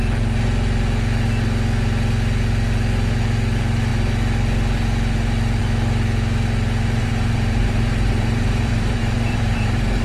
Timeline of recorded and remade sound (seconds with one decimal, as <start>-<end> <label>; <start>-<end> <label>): 0.0-7.0 recorded; 7.0-10.0 remade